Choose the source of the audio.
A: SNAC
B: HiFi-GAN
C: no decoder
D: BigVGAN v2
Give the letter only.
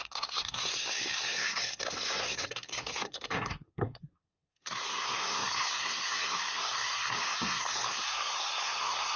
A